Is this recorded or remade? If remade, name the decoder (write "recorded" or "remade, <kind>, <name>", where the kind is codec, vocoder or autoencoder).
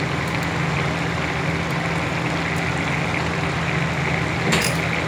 recorded